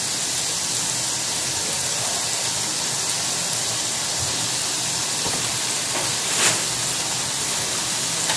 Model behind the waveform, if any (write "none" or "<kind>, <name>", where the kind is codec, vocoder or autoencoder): none